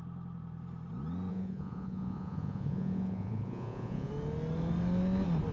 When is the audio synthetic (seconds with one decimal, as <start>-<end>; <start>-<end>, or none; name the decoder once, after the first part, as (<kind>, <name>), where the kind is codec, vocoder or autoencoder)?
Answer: 1.3-4.1 (vocoder, Vocos)